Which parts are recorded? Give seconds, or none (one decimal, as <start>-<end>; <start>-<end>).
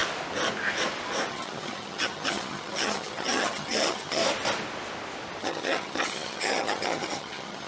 0.0-1.3; 4.2-5.4